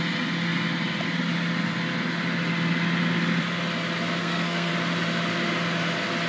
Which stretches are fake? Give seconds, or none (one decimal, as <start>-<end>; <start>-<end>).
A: 4.2-4.7